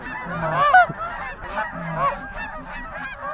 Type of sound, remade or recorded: recorded